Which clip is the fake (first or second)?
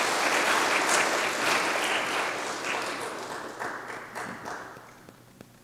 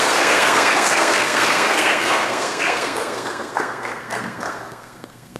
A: second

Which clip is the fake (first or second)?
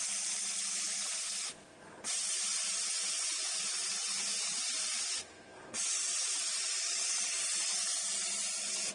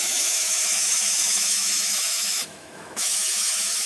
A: second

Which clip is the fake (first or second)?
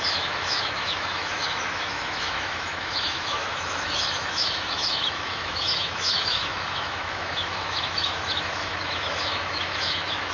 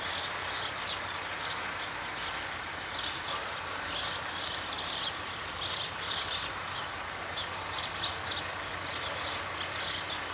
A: first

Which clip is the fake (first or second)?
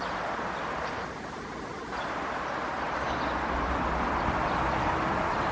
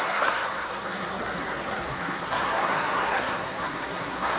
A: second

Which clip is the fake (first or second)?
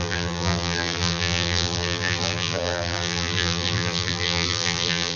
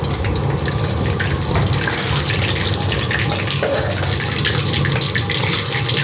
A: first